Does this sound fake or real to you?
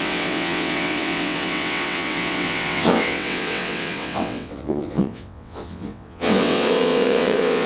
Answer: fake